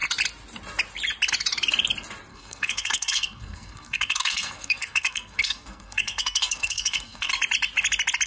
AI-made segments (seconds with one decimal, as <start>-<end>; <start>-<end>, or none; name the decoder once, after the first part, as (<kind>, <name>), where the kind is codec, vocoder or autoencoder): 2.3-7.3 (codec, SNAC)

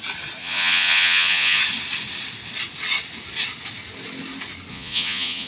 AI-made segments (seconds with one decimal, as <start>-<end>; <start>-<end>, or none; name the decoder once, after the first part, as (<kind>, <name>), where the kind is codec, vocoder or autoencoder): 0.4-1.6 (vocoder, Vocos); 4.7-5.5

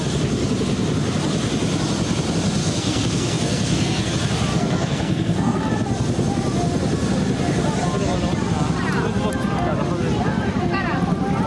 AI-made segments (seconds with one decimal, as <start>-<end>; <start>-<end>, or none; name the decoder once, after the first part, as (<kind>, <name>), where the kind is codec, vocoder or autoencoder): 2.6-4.1 (codec, SNAC); 4.5-5.7